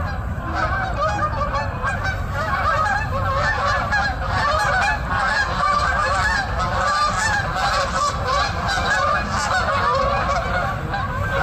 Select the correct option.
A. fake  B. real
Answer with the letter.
B